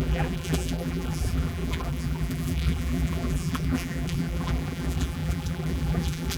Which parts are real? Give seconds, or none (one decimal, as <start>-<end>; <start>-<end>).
none